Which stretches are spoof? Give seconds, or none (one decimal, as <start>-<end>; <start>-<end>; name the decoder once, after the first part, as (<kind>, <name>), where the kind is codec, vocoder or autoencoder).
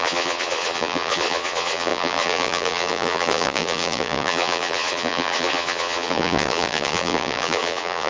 0.0-8.1 (vocoder, Vocos)